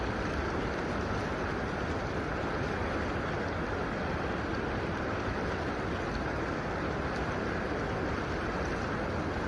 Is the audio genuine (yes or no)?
yes